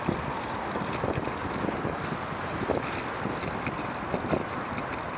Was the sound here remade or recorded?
remade